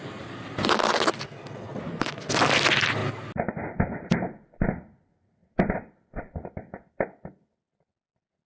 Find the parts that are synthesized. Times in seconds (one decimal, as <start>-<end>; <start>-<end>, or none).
none